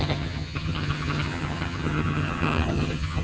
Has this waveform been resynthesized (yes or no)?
yes